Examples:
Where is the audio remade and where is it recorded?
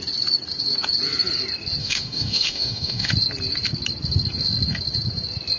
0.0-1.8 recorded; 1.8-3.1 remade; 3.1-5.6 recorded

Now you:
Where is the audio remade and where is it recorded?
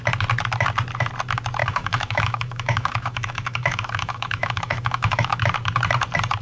0.0-1.6 recorded; 1.6-5.4 remade; 5.4-6.4 recorded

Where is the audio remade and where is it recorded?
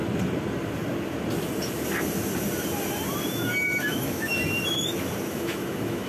0.0-3.3 recorded; 3.3-4.3 remade; 4.3-5.3 recorded; 5.3-6.1 remade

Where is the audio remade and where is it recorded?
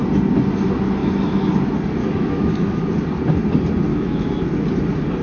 0.0-1.0 recorded; 1.0-1.5 remade; 1.5-2.0 recorded; 2.0-2.8 remade; 2.8-3.9 recorded; 3.9-4.4 remade; 4.4-5.2 recorded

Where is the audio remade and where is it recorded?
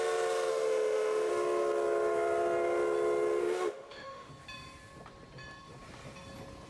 0.0-0.5 recorded; 0.5-1.3 remade; 1.3-3.4 recorded; 3.4-4.3 remade; 4.3-6.7 recorded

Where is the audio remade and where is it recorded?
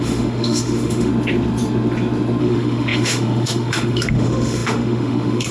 0.0-1.1 remade; 1.1-2.4 recorded; 2.4-5.5 remade